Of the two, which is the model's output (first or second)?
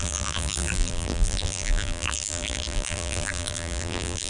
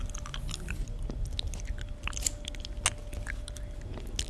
first